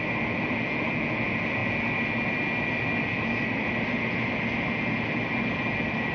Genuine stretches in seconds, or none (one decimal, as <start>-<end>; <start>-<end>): 0.0-6.1